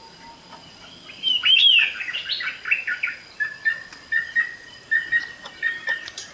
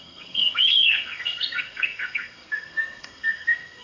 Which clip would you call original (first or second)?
first